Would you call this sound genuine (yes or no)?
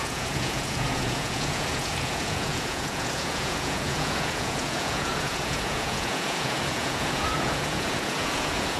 no